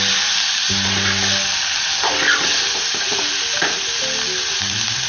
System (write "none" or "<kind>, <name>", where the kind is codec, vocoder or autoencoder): none